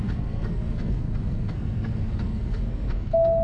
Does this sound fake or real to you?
fake